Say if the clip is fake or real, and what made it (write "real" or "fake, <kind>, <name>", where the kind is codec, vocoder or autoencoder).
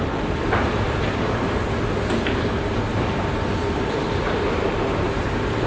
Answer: fake, vocoder, BigVGAN v2